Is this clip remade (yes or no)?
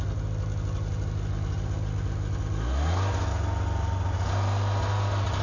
no